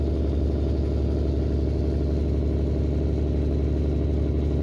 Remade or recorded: recorded